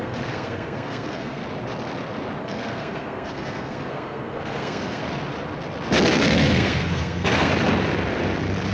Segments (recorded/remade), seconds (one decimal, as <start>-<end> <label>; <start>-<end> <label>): 0.0-1.4 remade; 1.4-2.4 recorded; 2.4-5.0 remade; 5.0-6.1 recorded; 6.1-7.5 remade; 7.5-8.7 recorded